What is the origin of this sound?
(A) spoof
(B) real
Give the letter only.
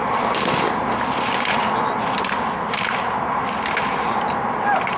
B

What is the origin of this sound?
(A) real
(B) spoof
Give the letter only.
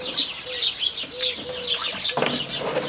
A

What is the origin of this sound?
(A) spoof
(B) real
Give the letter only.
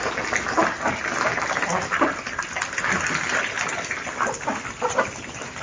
B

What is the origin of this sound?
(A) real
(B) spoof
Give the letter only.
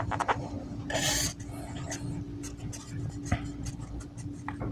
A